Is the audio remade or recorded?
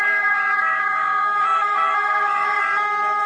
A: remade